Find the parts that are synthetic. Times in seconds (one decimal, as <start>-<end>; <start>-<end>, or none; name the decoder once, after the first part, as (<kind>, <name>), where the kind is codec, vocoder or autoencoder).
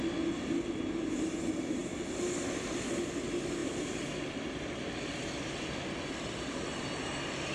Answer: 3.6-5.7 (vocoder, BigVGAN v2)